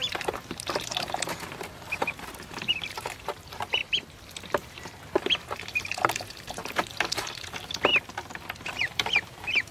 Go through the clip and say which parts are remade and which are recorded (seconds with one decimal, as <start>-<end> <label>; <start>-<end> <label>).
0.0-7.9 remade; 7.9-8.7 recorded; 8.7-9.7 remade